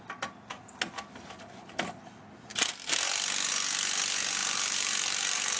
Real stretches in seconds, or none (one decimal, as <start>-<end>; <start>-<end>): 0.0-4.4